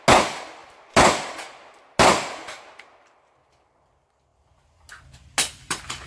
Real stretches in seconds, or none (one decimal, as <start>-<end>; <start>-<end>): 0.0-6.1